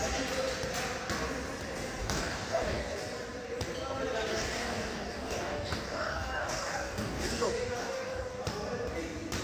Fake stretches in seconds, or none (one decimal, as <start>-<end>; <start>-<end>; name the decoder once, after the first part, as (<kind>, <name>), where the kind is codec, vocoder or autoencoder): 2.0-3.0 (codec, DAC); 4.3-8.4